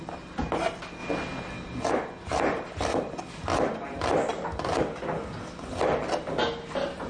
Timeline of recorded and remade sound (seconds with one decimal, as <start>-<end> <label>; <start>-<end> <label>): 0.0-7.1 recorded